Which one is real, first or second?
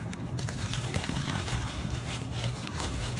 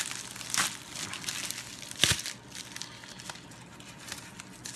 second